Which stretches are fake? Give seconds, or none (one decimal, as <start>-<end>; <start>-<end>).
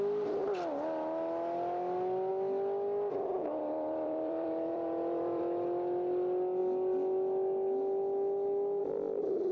3.6-5.4